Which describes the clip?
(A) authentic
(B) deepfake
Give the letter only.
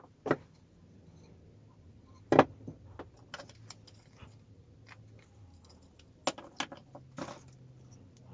A